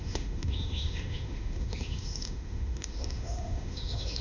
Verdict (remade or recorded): remade